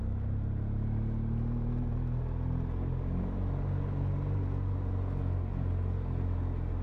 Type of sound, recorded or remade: recorded